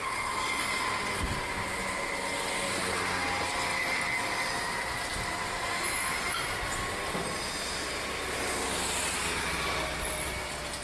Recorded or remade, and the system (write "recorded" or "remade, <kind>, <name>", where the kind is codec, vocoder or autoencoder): recorded